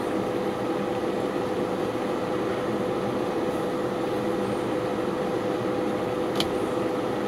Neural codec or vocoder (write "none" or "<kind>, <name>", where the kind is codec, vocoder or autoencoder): none